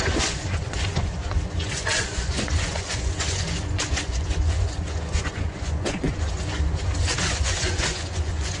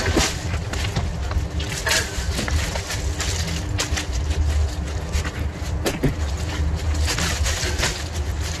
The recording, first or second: second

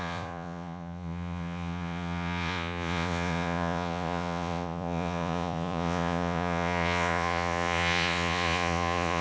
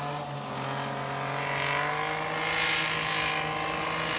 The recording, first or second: second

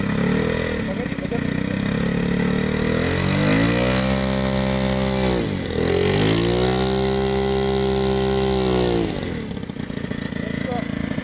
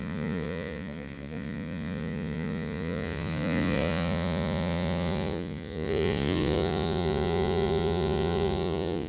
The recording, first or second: first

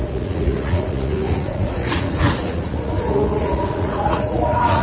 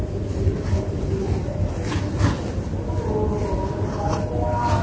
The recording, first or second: second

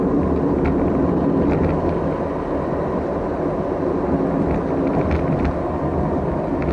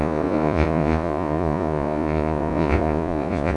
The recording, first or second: first